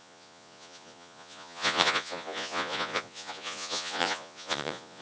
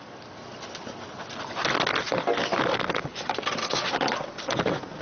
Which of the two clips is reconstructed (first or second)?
first